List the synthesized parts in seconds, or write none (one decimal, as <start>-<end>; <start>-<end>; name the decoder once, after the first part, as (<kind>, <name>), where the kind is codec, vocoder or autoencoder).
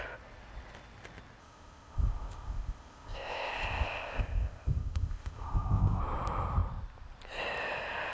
1.4-6.0 (codec, ZipCodec)